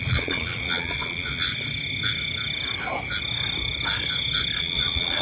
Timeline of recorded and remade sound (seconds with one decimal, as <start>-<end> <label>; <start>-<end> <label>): 0.0-1.5 remade; 1.5-4.6 recorded; 4.6-5.2 remade